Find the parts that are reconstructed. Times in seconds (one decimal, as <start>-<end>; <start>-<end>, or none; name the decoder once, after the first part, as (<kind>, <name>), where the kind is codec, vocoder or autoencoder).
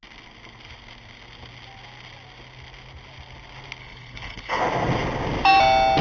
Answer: 3.8-4.6 (codec, HILCodec)